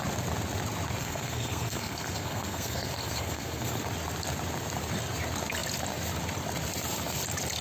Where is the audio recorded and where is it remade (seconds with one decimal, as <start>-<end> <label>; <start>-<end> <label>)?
0.0-1.0 recorded; 1.0-3.8 remade; 3.8-7.6 recorded